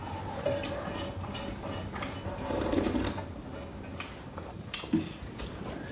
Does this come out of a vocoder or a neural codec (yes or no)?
no